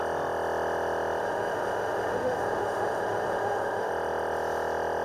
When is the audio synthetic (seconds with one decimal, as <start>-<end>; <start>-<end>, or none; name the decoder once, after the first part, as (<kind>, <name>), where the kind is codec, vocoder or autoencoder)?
1.2-3.9 (autoencoder, DAC-VAE)